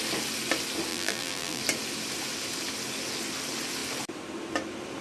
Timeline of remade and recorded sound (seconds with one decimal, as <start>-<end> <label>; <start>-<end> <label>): 0.0-0.9 recorded; 0.9-1.6 remade; 1.6-5.0 recorded